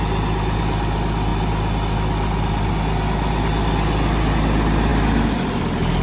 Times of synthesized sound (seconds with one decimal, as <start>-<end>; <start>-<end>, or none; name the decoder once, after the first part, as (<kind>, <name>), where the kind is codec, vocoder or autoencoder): 1.3-2.7 (vocoder, BigVGAN v2)